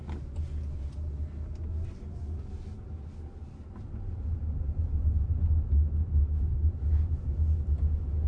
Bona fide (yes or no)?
yes